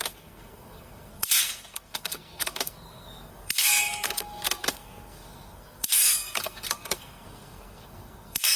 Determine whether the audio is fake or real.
fake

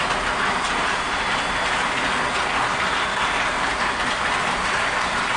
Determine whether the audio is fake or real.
real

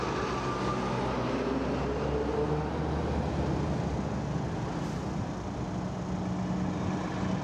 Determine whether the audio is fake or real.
real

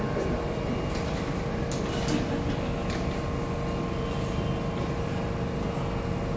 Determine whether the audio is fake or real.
real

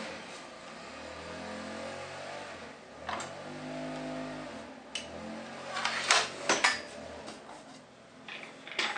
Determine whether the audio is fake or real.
real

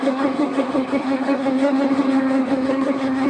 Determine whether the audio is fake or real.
fake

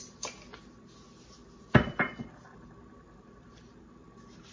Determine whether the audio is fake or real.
real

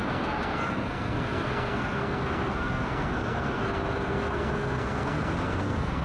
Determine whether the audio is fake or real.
fake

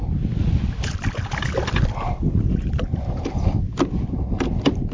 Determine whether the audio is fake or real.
real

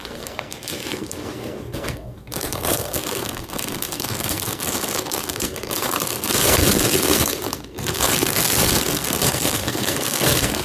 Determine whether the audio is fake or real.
fake